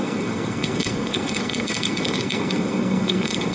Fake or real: fake